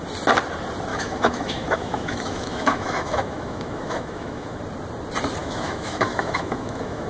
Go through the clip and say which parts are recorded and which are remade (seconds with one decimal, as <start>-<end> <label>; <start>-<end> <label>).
0.0-0.9 recorded; 0.9-4.6 remade; 4.6-5.4 recorded; 5.4-7.1 remade